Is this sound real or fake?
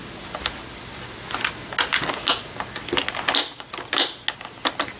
real